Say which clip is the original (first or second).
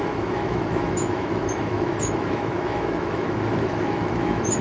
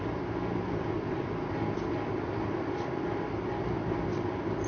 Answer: second